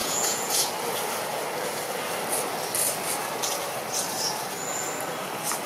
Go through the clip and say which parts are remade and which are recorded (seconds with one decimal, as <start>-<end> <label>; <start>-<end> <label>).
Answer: 0.0-0.7 remade; 0.7-5.7 recorded